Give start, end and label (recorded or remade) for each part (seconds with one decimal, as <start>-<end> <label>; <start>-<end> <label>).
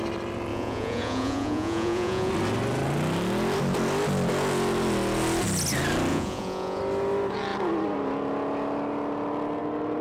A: 0.0-0.5 recorded; 0.5-2.3 remade; 2.3-6.1 recorded; 6.1-6.8 remade; 6.8-10.0 recorded